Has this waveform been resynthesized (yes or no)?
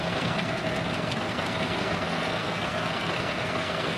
yes